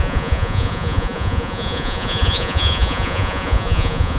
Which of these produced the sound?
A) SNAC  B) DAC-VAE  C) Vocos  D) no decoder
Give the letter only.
C